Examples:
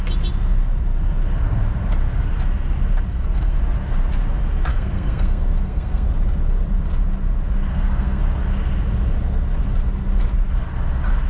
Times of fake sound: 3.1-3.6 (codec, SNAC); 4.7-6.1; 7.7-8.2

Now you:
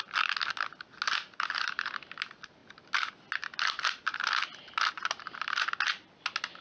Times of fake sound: none

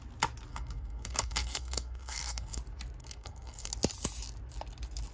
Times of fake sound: 0.5-2.6 (codec, SNAC); 3.0-3.7